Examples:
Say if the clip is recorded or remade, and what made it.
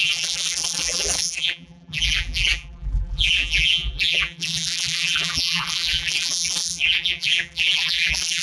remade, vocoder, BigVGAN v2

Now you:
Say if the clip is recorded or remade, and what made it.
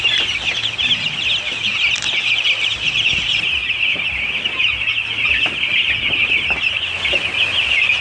recorded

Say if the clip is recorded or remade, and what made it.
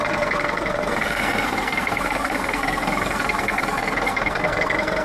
remade, codec, SNAC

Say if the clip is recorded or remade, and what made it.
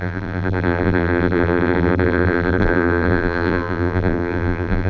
remade, vocoder, BigVGAN v2